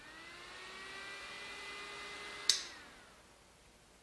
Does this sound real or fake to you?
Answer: real